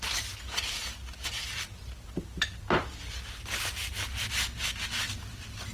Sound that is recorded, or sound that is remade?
recorded